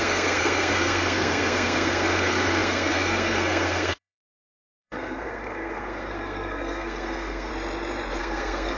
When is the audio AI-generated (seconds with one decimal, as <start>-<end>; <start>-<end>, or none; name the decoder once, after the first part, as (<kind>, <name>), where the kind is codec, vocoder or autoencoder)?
0.0-7.5 (codec, SNAC); 8.2-8.8

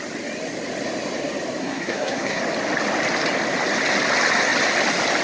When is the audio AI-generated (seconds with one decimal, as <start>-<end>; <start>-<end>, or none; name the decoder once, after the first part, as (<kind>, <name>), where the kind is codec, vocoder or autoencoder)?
1.6-2.4 (codec, SNAC)

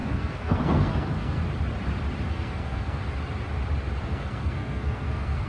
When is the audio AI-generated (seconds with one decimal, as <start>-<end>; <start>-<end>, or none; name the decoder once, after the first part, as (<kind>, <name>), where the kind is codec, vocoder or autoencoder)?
0.0-1.4 (codec, SNAC); 2.3-3.0; 4.0-5.5

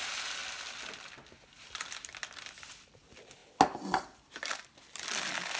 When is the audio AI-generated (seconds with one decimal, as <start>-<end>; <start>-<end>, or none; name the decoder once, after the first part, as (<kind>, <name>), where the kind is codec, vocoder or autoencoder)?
none

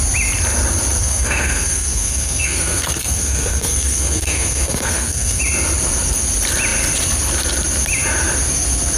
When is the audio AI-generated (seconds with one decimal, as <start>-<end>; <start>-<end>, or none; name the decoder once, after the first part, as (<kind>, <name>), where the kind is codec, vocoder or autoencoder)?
1.0-5.4 (codec, SNAC)

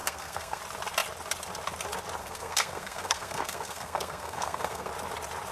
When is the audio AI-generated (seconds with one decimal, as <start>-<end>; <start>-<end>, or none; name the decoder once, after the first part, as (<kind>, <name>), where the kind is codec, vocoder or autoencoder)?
0.0-0.6 (codec, SNAC); 2.2-4.9